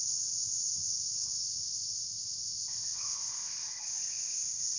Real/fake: fake